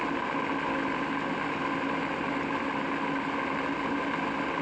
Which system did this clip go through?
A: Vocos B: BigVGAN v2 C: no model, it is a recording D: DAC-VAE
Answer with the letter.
C